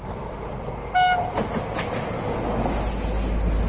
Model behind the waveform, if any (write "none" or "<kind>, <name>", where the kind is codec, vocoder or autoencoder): none